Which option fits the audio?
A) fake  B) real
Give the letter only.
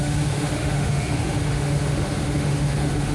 A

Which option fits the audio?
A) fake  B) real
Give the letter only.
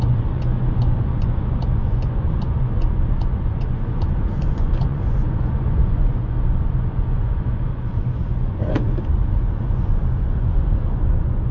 A